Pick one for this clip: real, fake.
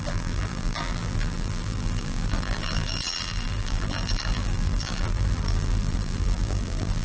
fake